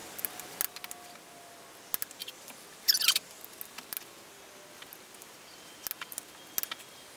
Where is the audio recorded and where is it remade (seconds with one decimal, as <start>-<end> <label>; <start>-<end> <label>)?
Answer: 0.0-7.2 recorded